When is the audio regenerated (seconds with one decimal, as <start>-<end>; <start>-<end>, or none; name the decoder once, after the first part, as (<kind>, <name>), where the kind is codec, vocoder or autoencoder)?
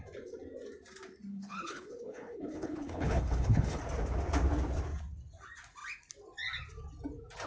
1.3-3.8 (codec, HILCodec)